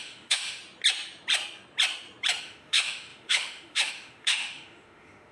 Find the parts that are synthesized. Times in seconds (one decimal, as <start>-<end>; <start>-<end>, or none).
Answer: 0.0-0.6; 2.4-5.3